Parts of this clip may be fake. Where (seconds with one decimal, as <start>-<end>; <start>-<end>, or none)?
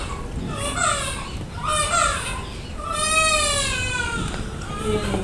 none